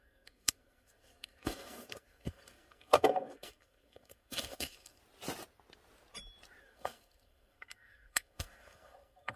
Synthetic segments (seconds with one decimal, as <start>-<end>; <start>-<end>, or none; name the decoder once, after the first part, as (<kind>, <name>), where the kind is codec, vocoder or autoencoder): 0.0-5.0 (codec, SNAC); 6.6-9.4